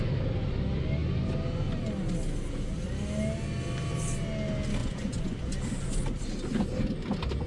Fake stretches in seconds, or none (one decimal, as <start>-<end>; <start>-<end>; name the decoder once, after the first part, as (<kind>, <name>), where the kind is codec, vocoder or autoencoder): 4.8-5.5 (vocoder, Vocos)

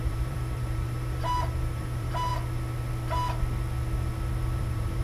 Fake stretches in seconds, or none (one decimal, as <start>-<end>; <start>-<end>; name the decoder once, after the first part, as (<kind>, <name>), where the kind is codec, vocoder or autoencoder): 0.0-2.3 (vocoder, BigVGAN v2); 4.6-5.0

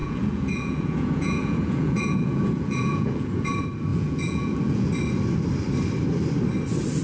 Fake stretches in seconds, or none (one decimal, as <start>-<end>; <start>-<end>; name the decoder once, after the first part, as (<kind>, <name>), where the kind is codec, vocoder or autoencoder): 0.0-3.5 (vocoder, Vocos); 3.9-4.9

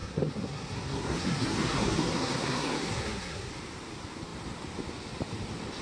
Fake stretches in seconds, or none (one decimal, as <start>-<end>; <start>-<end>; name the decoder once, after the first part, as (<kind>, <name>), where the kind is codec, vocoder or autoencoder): 0.0-3.5 (codec, SNAC)